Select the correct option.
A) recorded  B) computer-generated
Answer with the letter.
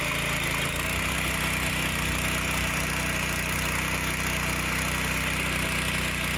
A